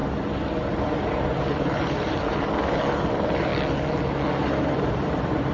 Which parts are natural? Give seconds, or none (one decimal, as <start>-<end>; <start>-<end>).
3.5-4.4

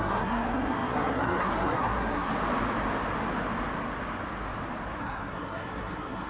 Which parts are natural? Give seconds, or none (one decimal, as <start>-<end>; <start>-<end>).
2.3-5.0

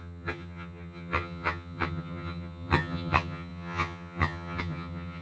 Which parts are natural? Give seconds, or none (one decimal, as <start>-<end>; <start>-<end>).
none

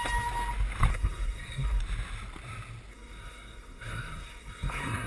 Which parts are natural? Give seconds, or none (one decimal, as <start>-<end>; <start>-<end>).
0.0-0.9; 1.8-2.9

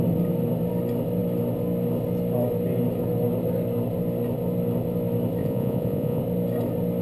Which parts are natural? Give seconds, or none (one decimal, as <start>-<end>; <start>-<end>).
0.0-5.4; 6.2-7.0